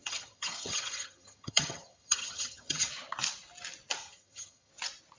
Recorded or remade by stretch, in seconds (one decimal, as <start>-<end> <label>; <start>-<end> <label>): 0.0-2.9 remade; 2.9-4.0 recorded; 4.0-4.7 remade; 4.7-5.2 recorded